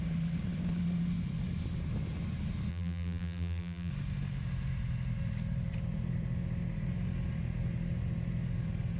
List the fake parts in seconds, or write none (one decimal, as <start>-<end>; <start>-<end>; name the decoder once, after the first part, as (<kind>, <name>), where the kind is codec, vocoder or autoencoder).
2.7-3.9 (vocoder, BigVGAN v2)